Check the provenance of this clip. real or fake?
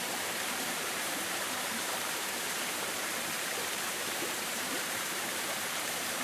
fake